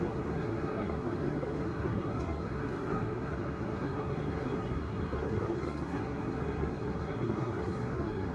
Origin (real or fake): fake